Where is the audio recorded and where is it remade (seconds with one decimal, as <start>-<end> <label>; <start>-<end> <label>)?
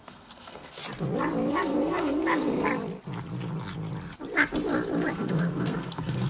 0.0-0.8 remade; 0.8-1.5 recorded; 1.5-2.7 remade; 2.7-5.1 recorded; 5.1-6.3 remade